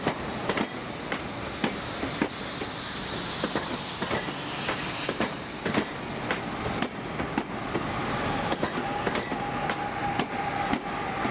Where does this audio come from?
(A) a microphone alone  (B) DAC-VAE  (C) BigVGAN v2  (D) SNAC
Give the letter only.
A